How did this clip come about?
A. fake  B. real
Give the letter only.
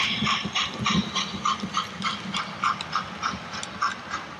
B